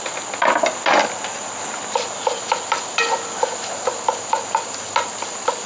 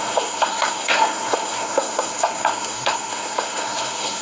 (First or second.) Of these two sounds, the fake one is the second